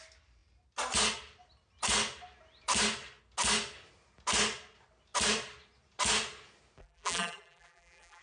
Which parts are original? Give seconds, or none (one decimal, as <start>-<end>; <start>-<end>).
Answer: 0.0-6.8

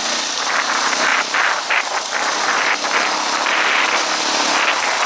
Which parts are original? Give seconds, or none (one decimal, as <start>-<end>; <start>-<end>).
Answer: 0.0-5.1